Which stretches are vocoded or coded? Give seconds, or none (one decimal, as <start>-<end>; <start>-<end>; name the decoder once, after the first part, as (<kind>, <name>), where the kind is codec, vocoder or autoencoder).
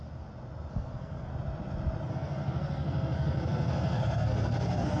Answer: 0.7-1.3 (codec, SNAC); 2.1-5.0